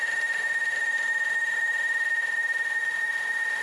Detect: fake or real real